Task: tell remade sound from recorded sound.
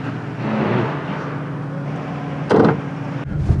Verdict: recorded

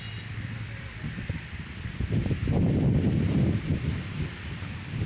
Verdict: remade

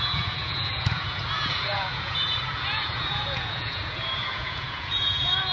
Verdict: remade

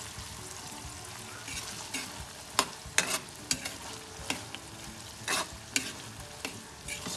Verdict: recorded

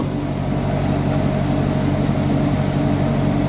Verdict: recorded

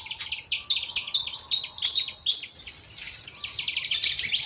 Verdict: recorded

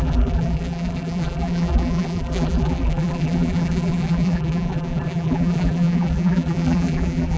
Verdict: remade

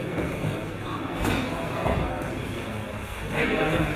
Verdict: remade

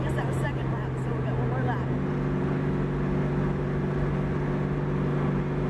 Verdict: recorded